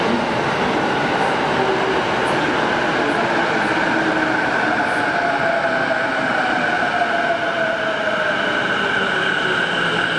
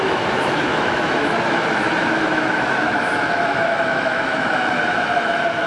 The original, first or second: first